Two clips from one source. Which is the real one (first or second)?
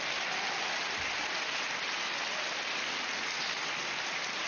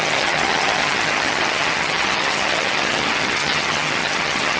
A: first